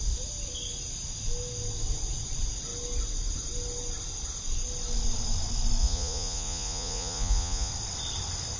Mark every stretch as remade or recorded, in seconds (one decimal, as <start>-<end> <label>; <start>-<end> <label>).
0.0-5.8 recorded; 5.8-7.7 remade; 7.7-8.6 recorded